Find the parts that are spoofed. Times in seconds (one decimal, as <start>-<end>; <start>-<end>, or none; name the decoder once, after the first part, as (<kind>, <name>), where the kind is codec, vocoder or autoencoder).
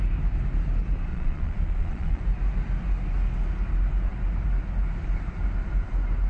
1.1-2.2 (vocoder, Vocos)